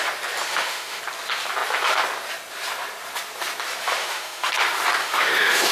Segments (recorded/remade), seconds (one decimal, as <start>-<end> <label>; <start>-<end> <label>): 0.0-0.5 recorded; 0.5-1.0 remade; 1.0-4.0 recorded; 4.0-4.5 remade; 4.5-5.0 recorded; 5.0-5.7 remade